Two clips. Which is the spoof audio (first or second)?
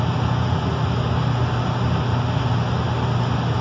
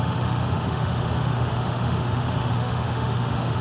second